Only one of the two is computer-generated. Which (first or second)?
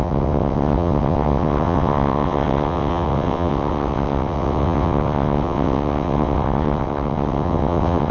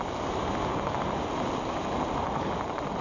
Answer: first